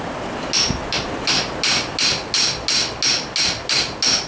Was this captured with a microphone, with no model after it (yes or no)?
yes